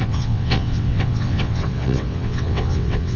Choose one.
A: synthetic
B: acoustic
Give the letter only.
A